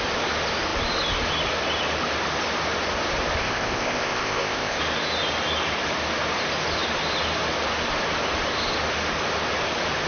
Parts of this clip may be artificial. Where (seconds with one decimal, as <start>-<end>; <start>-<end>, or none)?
3.4-4.8